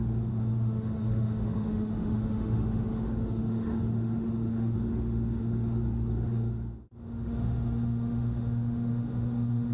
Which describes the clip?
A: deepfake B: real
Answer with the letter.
A